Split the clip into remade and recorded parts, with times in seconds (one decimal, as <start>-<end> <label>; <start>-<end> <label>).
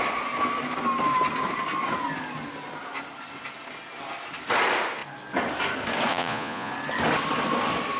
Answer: 0.0-6.1 recorded; 6.1-6.7 remade; 6.7-8.0 recorded